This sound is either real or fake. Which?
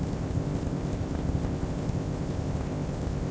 fake